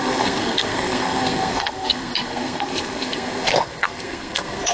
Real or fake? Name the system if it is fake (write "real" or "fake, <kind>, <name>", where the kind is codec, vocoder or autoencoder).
fake, codec, SNAC